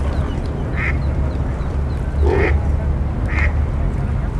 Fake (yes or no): no